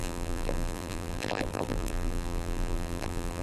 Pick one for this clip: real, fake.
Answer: fake